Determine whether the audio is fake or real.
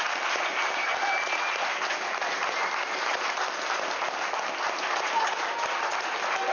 real